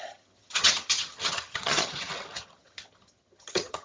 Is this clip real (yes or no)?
no